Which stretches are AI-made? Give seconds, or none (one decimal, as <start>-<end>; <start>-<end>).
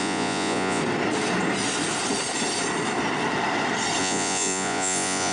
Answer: 0.0-0.8; 4.0-5.3